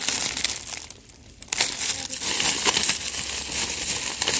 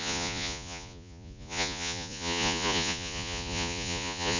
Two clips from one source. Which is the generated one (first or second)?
second